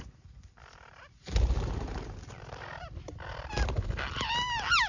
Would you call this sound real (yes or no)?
yes